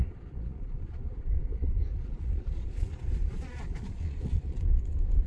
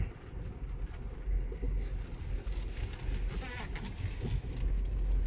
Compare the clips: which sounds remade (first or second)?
first